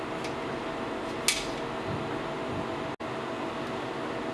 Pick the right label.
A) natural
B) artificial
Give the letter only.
A